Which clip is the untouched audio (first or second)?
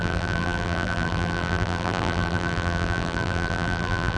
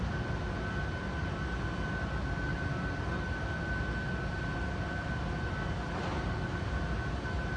second